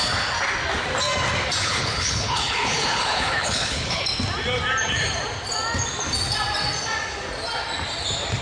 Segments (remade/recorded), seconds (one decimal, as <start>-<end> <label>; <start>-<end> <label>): 0.0-1.6 recorded; 1.6-4.0 remade; 4.0-8.4 recorded